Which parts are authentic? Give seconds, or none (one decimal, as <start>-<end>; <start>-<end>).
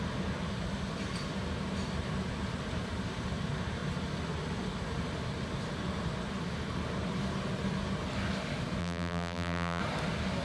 0.0-8.8; 9.8-10.4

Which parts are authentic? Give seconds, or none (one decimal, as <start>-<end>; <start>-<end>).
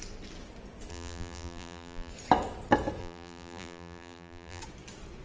0.0-0.9; 2.1-3.0; 4.6-5.2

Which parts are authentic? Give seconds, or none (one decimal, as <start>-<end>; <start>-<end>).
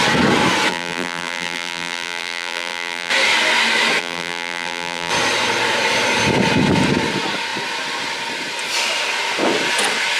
0.0-0.7; 3.1-4.0; 5.1-10.2